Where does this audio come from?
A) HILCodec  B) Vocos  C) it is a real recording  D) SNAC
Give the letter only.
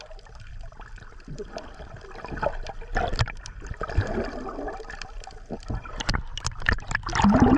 C